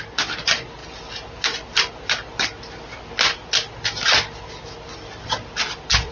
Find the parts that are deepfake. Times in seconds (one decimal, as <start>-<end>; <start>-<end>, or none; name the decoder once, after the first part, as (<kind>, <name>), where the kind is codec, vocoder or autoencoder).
none